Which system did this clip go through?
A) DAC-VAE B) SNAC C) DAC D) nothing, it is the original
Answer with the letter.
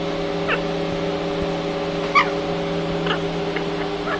D